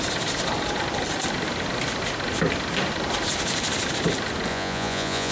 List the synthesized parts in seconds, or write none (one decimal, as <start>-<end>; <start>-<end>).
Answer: 4.5-5.3